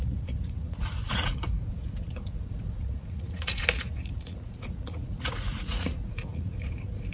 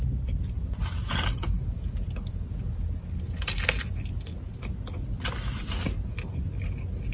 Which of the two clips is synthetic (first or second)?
first